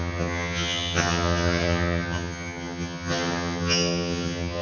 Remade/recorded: remade